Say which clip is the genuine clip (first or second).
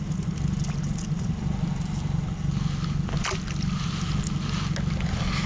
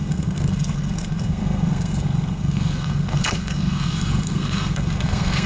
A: first